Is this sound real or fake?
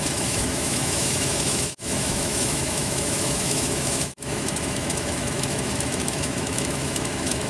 fake